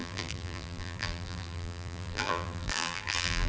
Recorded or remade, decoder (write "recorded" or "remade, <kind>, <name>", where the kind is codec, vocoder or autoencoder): remade, vocoder, BigVGAN v2